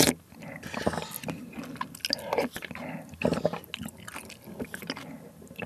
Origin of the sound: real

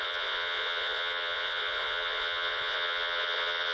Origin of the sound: fake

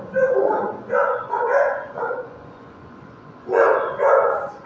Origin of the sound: fake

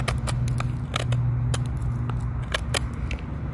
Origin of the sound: real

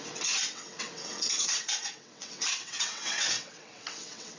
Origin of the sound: fake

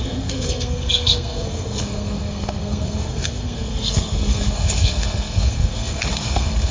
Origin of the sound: fake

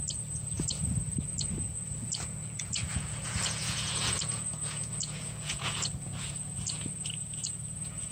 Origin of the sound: fake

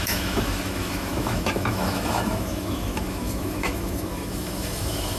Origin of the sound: fake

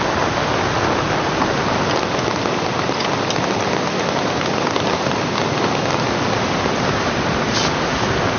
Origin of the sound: real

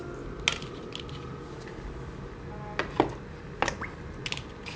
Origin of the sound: real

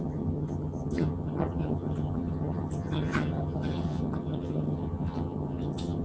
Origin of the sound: fake